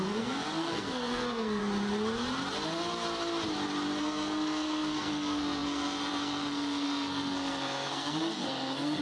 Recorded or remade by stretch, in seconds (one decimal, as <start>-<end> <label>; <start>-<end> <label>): 0.0-1.6 remade; 1.6-4.0 recorded; 4.0-9.0 remade